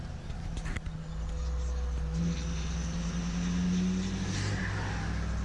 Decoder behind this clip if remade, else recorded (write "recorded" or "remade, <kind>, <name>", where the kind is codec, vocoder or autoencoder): recorded